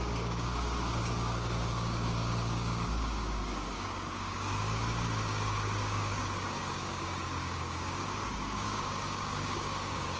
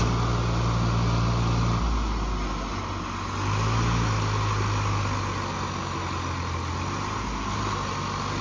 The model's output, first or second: first